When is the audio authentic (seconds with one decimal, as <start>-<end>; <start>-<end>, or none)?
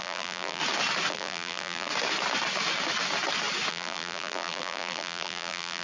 0.6-1.1; 1.9-3.7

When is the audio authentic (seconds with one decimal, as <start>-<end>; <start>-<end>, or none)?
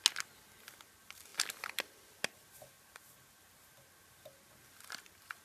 0.0-5.4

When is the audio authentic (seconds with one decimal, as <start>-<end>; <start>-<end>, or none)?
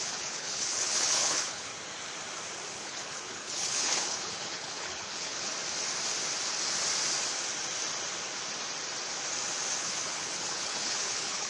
1.7-2.7; 5.5-9.8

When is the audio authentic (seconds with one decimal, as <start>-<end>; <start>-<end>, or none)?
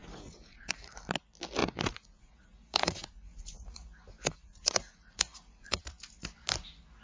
1.0-1.6; 5.8-7.0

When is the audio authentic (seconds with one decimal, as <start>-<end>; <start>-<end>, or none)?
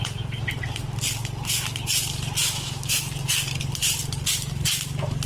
0.0-2.4; 3.0-5.3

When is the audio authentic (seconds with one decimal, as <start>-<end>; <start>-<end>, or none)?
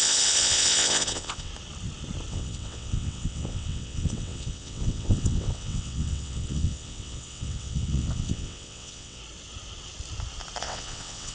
1.5-2.3; 9.2-10.6